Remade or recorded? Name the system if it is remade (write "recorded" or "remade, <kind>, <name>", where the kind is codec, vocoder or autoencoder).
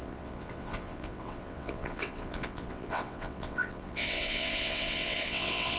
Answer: remade, vocoder, WaveNeXt